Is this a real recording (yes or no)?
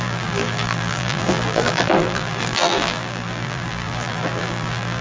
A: no